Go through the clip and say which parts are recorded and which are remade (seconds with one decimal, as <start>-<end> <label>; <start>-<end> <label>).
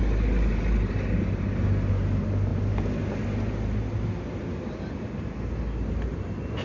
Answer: 0.0-6.6 recorded